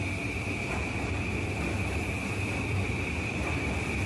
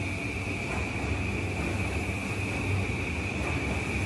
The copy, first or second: first